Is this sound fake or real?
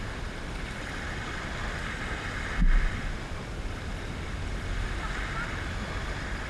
real